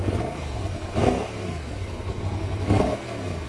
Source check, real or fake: fake